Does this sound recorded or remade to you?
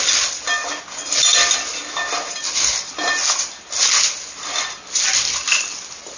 recorded